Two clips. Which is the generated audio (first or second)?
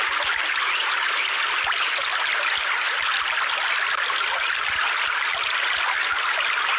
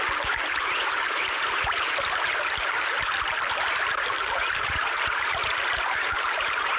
second